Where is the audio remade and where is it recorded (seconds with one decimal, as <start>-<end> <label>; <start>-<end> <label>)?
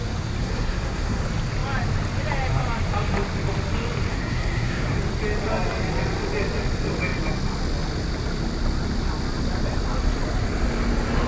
0.0-0.4 recorded; 0.4-1.2 remade; 1.2-4.1 recorded; 4.1-5.0 remade; 5.0-11.3 recorded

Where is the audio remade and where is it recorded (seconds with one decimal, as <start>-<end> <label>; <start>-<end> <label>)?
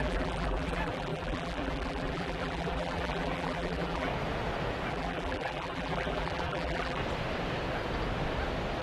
0.0-4.1 remade; 4.1-4.9 recorded; 4.9-7.0 remade; 7.0-8.8 recorded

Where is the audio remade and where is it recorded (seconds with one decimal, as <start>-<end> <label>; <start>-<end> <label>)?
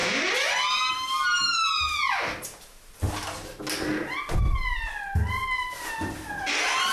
0.0-6.9 recorded